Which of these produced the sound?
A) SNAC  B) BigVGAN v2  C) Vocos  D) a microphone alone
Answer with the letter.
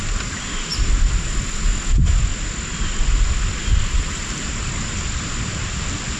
D